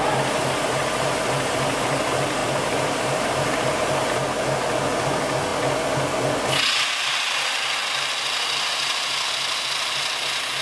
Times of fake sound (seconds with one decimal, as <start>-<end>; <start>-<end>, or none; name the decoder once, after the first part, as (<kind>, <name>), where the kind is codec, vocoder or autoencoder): none